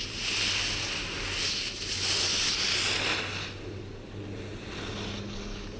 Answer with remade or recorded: recorded